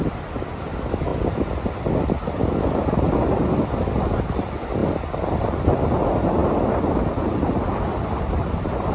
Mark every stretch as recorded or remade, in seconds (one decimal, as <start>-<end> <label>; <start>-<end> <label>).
0.0-8.9 recorded